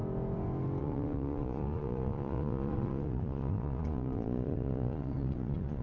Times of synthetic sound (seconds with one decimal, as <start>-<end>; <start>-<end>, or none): 0.8-5.8

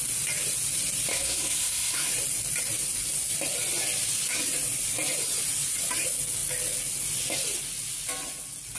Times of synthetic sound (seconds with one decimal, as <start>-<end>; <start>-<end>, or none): 1.1-2.1

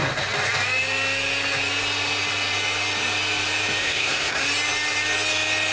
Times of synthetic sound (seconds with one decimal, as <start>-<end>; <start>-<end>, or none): 3.8-4.4